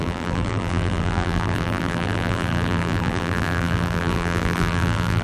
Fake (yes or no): yes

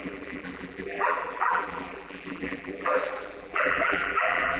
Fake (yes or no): yes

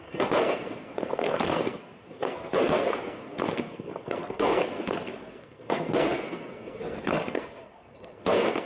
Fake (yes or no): yes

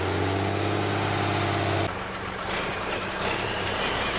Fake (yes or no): no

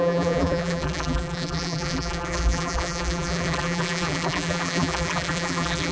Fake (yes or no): yes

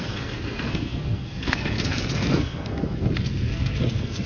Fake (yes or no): yes